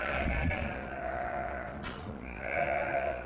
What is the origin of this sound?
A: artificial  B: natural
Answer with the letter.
A